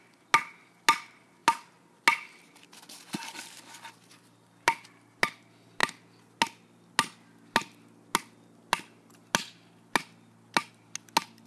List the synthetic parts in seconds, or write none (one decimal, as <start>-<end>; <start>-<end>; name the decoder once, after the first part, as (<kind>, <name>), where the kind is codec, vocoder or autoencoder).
none